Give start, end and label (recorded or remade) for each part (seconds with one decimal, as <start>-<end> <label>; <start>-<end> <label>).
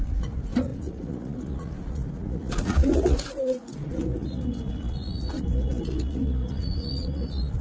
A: 0.0-7.6 remade